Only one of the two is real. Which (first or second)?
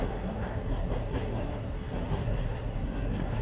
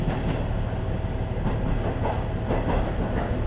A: second